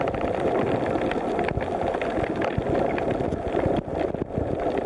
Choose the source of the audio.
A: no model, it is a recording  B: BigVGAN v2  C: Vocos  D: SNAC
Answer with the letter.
A